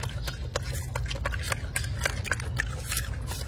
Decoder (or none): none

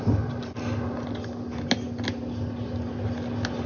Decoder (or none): none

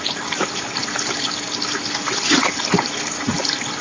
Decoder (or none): none